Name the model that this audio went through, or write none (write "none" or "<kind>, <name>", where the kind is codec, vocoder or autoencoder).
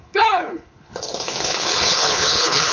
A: codec, HILCodec